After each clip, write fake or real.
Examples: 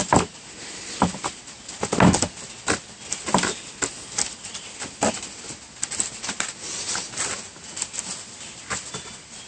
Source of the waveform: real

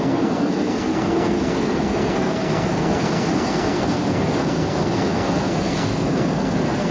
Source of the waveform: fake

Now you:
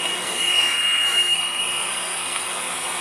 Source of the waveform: fake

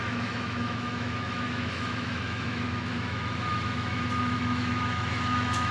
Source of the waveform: fake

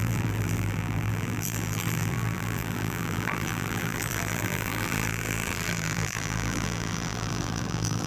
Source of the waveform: fake